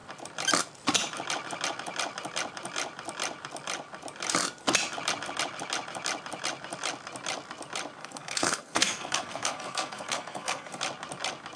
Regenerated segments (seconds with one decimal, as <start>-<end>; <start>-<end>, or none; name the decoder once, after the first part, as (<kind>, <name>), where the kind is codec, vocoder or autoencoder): 8.0-10.8 (codec, SNAC)